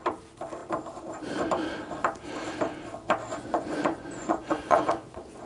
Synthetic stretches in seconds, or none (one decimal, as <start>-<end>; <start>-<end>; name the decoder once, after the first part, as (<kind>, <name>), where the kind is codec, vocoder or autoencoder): 3.3-5.5 (vocoder, Vocos)